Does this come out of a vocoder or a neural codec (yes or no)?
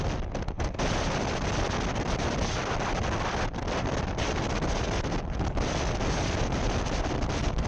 yes